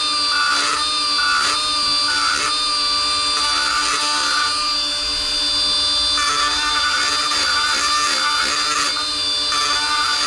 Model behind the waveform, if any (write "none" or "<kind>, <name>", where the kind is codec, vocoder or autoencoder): none